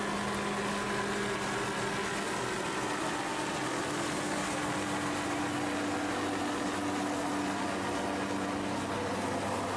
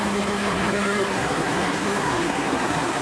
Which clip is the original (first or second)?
first